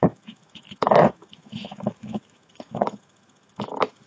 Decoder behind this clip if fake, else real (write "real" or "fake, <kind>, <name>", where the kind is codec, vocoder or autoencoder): fake, autoencoder, DAC-VAE